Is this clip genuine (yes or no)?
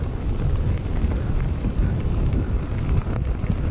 yes